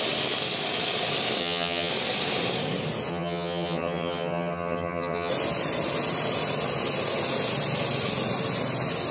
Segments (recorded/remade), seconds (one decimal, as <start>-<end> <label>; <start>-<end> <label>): 0.0-1.4 recorded; 1.4-1.9 remade; 1.9-3.1 recorded; 3.1-5.3 remade; 5.3-9.1 recorded